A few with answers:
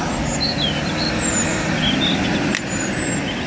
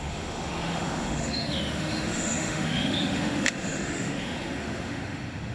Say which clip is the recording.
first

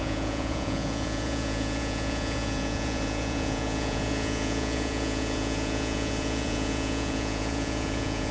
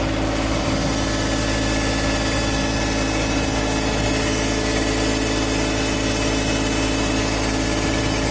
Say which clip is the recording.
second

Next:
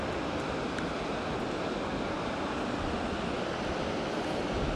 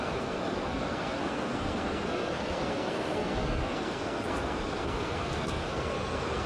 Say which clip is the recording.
first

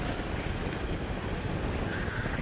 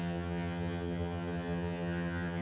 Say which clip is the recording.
first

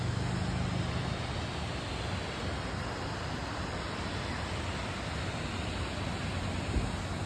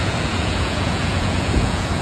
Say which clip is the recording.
first